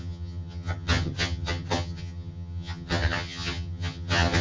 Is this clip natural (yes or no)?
no